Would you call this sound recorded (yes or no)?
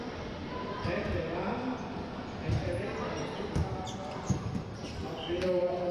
yes